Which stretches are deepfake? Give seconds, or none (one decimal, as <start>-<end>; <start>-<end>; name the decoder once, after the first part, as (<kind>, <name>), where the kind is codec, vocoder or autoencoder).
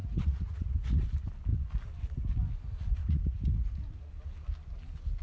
0.0-1.0 (vocoder, Vocos); 3.0-4.1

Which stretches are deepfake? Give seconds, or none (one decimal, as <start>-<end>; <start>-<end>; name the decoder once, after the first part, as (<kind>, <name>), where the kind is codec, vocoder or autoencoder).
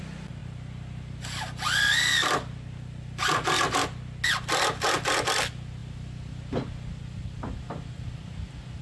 none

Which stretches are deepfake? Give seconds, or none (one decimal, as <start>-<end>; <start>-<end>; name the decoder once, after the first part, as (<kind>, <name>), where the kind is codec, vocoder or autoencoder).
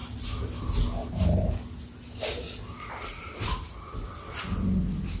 none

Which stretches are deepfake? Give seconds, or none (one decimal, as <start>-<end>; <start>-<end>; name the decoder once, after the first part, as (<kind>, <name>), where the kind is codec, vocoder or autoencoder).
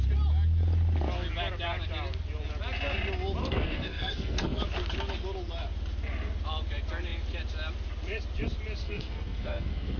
3.4-4.6 (codec, SNAC); 8.8-10.0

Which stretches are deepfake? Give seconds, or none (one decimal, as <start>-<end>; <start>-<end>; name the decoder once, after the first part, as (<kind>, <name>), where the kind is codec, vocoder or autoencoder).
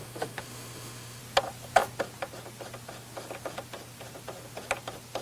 0.0-1.2 (autoencoder, DAC-VAE)